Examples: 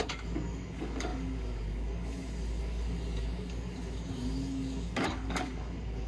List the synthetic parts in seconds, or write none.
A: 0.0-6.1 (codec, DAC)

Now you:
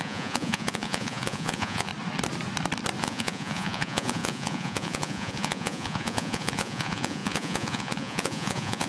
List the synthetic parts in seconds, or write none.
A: 0.0-1.9 (vocoder, Vocos); 3.0-8.9

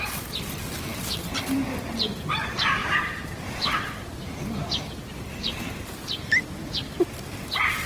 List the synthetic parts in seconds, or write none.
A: none

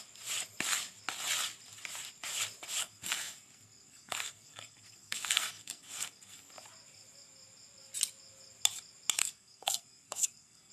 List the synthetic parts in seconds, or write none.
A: 2.8-6.5 (codec, SNAC); 9.2-10.7

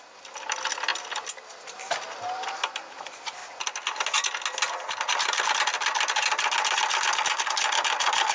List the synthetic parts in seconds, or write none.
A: 0.0-0.9 (vocoder, BigVGAN v2); 1.5-3.4; 7.2-8.3

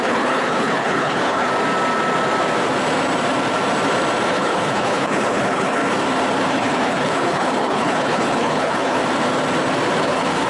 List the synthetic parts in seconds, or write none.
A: 0.0-1.5 (codec, HILCodec); 4.3-5.8; 6.5-9.0; 10.0-10.5